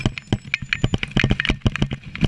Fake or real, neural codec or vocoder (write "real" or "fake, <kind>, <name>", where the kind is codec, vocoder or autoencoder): real